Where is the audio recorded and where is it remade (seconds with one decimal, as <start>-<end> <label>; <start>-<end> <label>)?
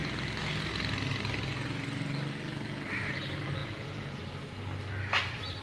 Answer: 0.0-3.6 recorded; 3.6-4.2 remade; 4.2-5.6 recorded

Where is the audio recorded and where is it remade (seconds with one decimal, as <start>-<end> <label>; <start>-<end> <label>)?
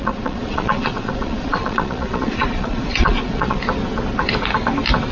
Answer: 0.0-3.6 remade; 3.6-5.1 recorded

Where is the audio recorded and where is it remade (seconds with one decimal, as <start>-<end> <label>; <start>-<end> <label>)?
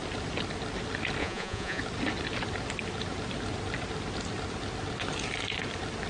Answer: 0.0-1.2 recorded; 1.2-1.8 remade; 1.8-6.1 recorded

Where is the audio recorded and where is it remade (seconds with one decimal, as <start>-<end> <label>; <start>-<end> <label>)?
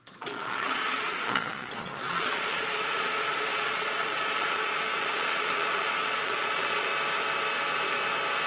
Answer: 0.0-6.9 remade; 6.9-8.5 recorded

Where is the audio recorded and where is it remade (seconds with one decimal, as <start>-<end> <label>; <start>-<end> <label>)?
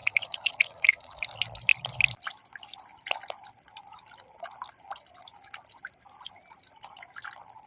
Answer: 0.0-1.2 remade; 1.2-7.7 recorded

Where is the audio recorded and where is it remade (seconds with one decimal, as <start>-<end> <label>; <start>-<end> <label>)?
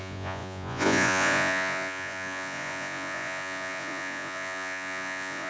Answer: 0.0-5.5 remade